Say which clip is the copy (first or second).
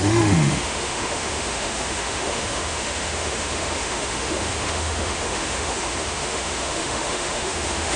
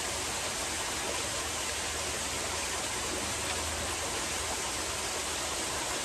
first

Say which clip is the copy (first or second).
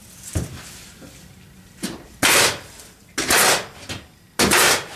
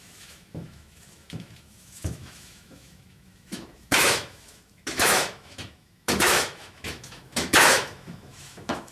second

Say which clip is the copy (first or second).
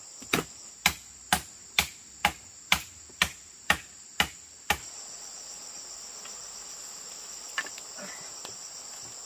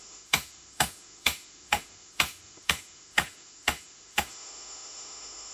second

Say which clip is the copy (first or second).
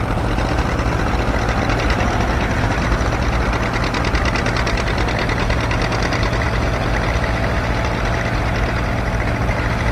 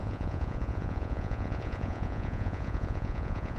second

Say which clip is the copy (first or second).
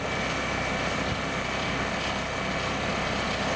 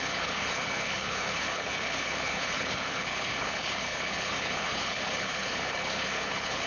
second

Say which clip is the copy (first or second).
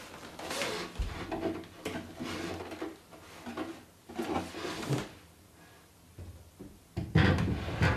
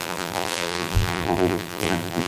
second